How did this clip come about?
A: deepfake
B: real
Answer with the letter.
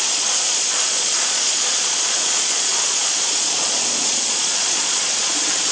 A